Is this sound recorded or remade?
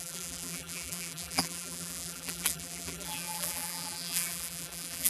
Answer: remade